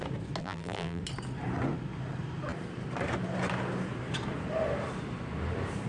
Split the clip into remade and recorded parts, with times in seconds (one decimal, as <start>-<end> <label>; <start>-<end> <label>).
0.0-0.4 recorded; 0.4-1.0 remade; 1.0-5.9 recorded